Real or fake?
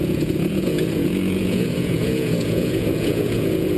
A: fake